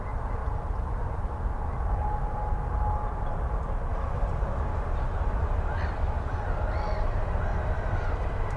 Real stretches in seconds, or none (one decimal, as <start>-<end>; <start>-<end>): 0.0-7.5